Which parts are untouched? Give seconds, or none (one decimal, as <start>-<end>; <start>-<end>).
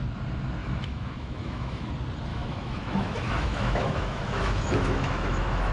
0.0-0.6; 1.9-2.3